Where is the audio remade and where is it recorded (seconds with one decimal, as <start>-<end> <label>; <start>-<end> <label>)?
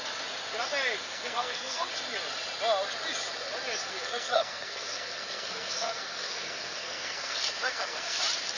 0.0-1.0 recorded; 1.0-1.9 remade; 1.9-3.8 recorded; 3.8-8.2 remade; 8.2-8.6 recorded